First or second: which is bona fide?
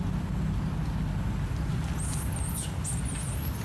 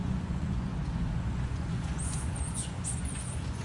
first